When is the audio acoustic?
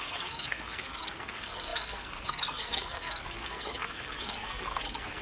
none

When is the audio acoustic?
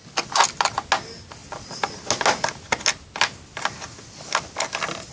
0.0-5.1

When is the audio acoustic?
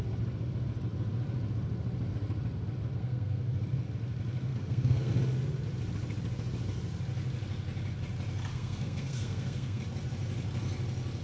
0.0-2.9; 3.5-4.5; 5.1-8.5; 9.8-11.2